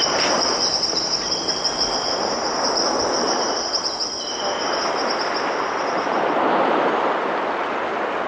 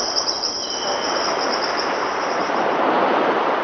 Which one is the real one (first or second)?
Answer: first